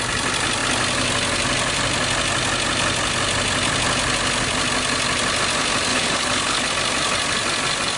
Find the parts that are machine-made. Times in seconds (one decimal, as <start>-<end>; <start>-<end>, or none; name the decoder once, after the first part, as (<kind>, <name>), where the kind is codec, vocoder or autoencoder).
5.9-6.7 (codec, HILCodec)